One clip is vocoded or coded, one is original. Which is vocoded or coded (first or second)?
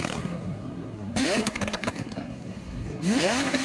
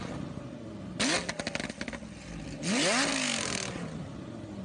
first